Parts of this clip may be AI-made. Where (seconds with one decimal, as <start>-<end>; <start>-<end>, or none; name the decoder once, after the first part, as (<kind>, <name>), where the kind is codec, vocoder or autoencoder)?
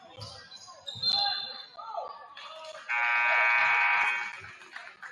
3.6-4.1 (vocoder, Vocos)